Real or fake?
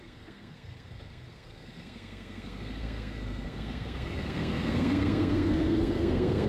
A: fake